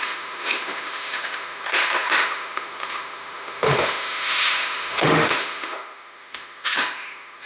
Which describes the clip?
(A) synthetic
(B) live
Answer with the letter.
A